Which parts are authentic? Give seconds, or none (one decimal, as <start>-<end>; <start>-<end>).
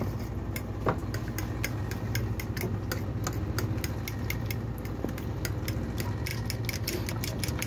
0.0-7.7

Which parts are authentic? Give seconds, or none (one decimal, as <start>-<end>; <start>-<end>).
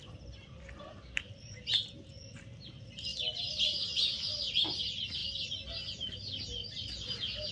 0.0-7.5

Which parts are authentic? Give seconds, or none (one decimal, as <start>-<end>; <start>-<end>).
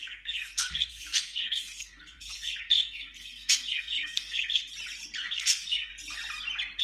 4.6-5.2; 5.9-6.8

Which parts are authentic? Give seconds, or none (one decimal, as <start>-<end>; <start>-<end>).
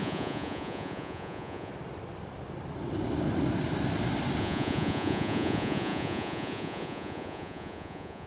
1.7-4.4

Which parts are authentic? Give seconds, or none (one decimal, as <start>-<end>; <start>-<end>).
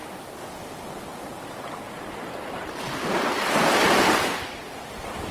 0.0-3.2